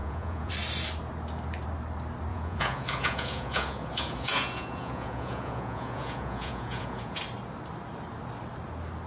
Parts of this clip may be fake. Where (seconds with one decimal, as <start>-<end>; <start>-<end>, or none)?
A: 0.0-0.5; 2.3-7.2